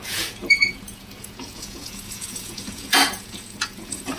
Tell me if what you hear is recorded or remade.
remade